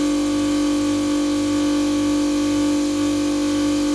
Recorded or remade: recorded